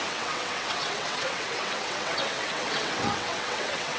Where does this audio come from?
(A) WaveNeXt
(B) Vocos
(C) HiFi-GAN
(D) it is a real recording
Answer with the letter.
A